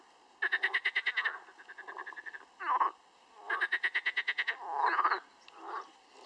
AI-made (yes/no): no